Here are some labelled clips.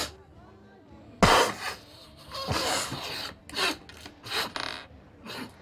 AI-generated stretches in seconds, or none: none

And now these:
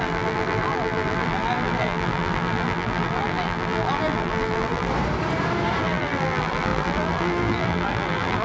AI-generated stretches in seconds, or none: 0.0-4.9; 5.8-8.4

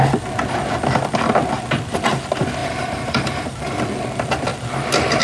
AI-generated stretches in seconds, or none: 2.6-3.8

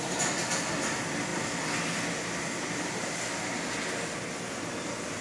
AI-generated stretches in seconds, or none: none